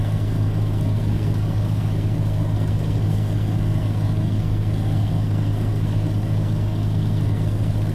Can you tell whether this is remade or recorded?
remade